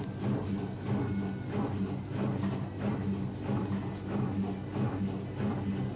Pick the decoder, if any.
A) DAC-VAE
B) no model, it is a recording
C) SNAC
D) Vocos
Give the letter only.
B